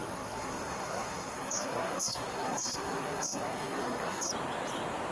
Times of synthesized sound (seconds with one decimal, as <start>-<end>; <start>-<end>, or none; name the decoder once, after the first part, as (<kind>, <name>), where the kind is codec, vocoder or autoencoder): 0.0-4.3 (codec, SNAC)

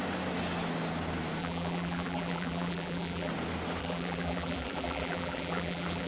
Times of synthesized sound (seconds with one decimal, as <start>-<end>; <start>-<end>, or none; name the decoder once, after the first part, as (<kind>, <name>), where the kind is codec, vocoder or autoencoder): 1.4-3.3 (vocoder, BigVGAN v2); 3.8-6.1

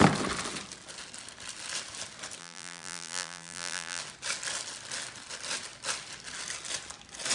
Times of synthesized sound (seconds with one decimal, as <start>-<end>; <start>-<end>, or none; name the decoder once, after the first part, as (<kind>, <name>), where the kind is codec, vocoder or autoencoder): 2.4-4.0 (vocoder, BigVGAN v2)

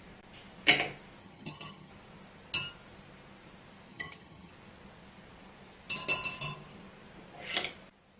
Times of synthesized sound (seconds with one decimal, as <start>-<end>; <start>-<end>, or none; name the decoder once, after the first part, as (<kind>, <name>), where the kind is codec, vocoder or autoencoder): 1.2-1.9 (vocoder, HiFi-GAN); 3.9-4.5

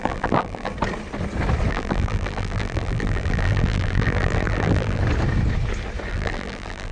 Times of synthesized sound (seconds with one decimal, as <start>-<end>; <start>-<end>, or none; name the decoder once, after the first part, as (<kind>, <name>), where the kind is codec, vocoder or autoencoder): 0.0-0.7 (vocoder, BigVGAN v2); 1.7-5.0; 6.1-6.9

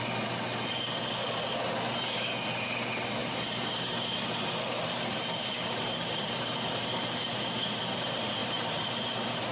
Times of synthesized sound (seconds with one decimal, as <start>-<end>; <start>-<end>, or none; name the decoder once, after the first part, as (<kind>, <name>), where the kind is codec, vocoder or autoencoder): 3.2-7.3 (vocoder, BigVGAN v2); 8.4-9.1